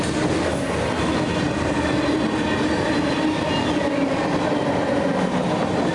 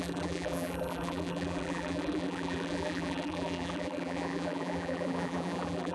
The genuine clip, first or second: first